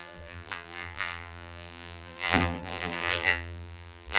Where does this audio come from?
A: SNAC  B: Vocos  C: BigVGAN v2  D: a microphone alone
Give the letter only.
C